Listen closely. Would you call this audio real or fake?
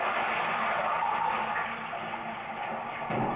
real